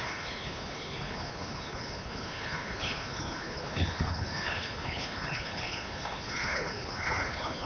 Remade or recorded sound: remade